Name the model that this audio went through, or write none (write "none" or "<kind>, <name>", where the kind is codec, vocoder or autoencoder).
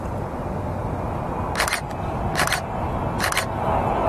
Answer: none